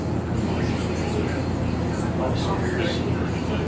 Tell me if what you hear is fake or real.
real